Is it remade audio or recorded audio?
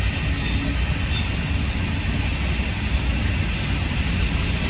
recorded